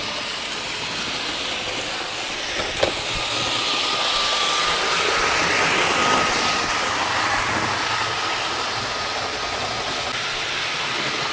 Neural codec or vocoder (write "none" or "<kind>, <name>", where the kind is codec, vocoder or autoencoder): none